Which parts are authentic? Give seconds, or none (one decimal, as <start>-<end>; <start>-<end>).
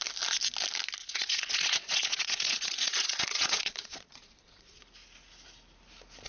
0.0-1.0; 4.8-6.3